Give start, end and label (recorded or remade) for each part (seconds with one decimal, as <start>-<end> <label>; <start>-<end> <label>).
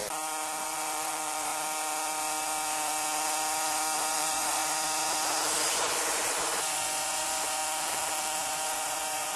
0.0-0.6 recorded; 0.6-1.5 remade; 1.5-4.1 recorded; 4.1-4.6 remade; 4.6-5.6 recorded; 5.6-7.6 remade; 7.6-8.4 recorded; 8.4-9.4 remade